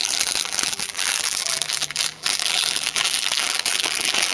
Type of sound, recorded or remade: remade